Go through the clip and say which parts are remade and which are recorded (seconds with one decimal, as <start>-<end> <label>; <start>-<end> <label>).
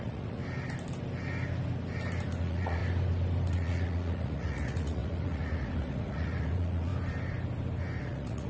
0.0-0.4 remade; 0.4-2.4 recorded; 2.4-2.8 remade; 2.8-3.5 recorded; 3.5-6.9 remade; 6.9-8.0 recorded; 8.0-8.5 remade